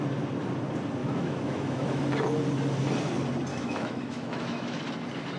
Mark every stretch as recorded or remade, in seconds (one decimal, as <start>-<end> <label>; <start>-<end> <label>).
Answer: 0.0-1.0 recorded; 1.0-2.0 remade; 2.0-3.5 recorded; 3.5-4.8 remade; 4.8-5.4 recorded